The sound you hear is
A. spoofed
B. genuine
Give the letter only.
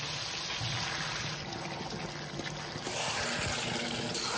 B